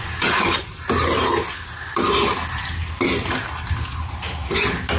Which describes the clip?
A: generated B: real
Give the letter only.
B